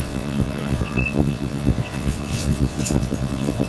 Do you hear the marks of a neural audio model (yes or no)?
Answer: yes